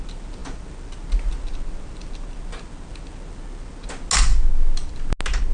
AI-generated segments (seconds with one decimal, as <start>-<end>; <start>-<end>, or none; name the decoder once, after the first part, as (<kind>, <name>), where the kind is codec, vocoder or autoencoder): none